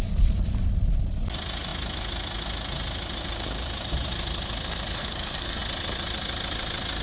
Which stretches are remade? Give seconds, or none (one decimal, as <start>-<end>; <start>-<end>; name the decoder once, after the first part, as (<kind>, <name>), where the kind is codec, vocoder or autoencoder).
5.0-5.6 (codec, SNAC)